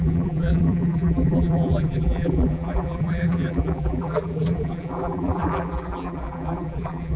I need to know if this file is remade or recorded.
remade